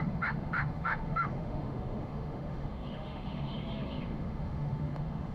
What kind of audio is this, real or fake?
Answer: fake